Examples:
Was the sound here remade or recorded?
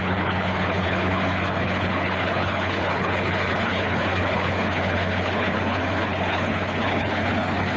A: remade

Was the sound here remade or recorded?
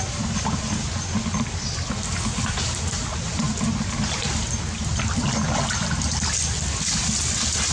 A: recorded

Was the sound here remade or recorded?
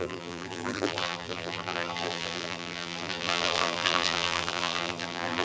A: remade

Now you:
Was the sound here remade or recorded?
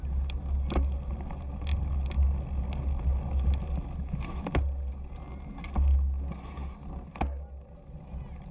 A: recorded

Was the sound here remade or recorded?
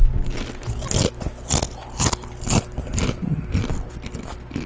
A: recorded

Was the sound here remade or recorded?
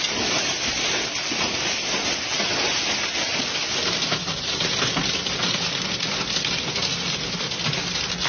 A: recorded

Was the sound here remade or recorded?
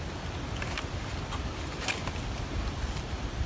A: recorded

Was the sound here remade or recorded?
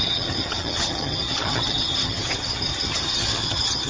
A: remade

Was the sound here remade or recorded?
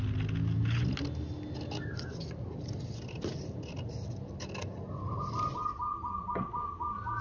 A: recorded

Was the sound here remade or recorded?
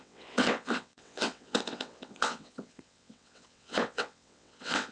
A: remade